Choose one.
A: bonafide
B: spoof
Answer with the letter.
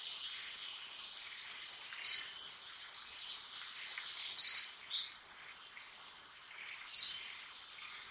A